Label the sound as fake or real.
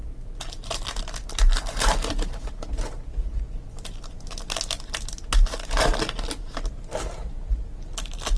real